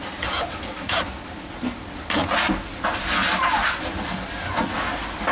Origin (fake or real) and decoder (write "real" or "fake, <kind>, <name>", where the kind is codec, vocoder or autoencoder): real